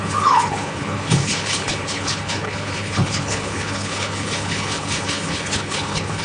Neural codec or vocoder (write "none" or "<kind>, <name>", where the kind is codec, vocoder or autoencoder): codec, HILCodec